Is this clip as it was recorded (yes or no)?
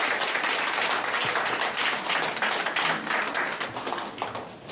yes